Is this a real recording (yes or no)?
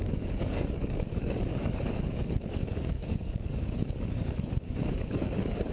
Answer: no